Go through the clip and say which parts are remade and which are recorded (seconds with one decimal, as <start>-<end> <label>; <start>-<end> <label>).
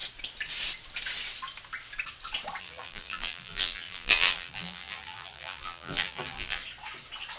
0.0-2.6 recorded; 2.6-6.6 remade; 6.6-7.4 recorded